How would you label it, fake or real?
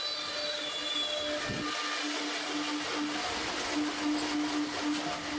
real